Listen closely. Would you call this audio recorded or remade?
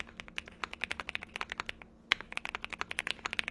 recorded